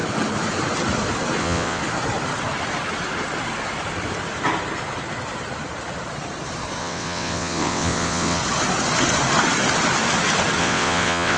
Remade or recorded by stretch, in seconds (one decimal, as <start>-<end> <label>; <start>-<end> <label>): 0.0-1.4 recorded; 1.4-1.8 remade; 1.8-6.8 recorded; 6.8-8.4 remade; 8.4-10.6 recorded; 10.6-11.4 remade